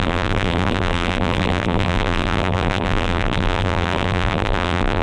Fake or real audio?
fake